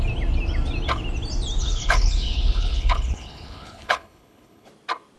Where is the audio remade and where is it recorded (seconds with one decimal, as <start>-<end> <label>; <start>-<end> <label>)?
0.0-1.6 recorded; 1.6-4.7 remade; 4.7-5.2 recorded